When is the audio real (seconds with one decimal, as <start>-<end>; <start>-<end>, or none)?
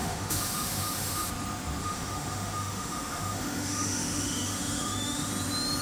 1.3-1.8; 5.3-5.8